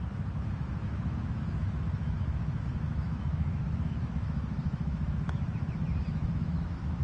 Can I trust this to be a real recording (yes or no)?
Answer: no